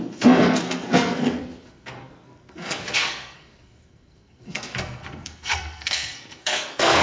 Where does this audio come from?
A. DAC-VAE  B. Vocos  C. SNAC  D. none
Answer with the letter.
C